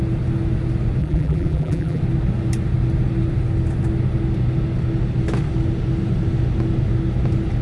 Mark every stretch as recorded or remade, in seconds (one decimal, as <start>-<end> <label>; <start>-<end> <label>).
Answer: 0.0-1.0 recorded; 1.0-2.0 remade; 2.0-7.6 recorded